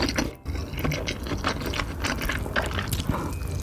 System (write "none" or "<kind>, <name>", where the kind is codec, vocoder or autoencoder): none